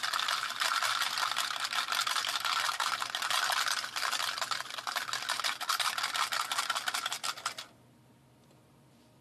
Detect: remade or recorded recorded